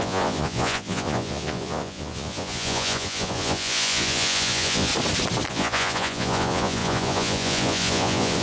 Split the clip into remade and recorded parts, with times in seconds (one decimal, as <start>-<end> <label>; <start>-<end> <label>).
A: 0.0-4.9 remade; 4.9-5.5 recorded; 5.5-8.4 remade